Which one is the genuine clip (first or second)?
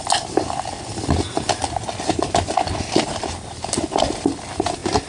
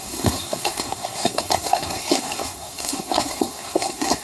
first